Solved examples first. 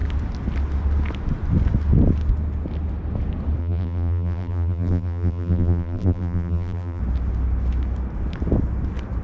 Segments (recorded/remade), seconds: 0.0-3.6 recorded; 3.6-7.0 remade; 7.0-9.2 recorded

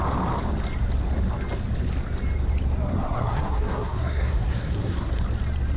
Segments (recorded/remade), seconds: 0.0-2.9 recorded; 2.9-5.2 remade; 5.2-5.8 recorded